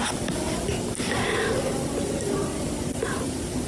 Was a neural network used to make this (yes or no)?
no